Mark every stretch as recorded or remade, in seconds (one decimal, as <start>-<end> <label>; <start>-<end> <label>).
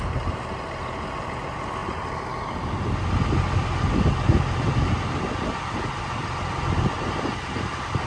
0.0-8.1 recorded